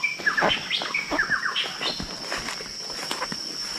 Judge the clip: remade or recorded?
recorded